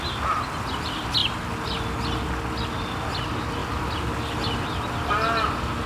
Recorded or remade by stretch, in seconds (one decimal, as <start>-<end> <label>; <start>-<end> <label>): 0.0-5.9 recorded